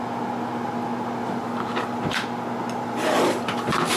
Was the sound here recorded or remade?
recorded